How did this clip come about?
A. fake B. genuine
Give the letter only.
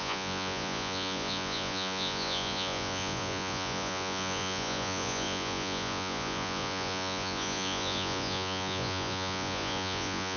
A